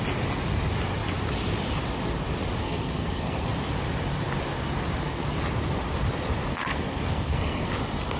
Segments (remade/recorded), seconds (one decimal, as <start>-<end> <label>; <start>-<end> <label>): 0.0-2.6 recorded; 2.6-3.5 remade; 3.5-6.5 recorded; 6.5-7.7 remade; 7.7-8.2 recorded